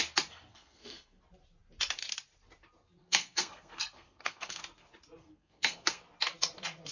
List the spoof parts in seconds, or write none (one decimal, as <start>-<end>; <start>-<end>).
0.5-1.2; 3.0-4.6; 5.2-6.0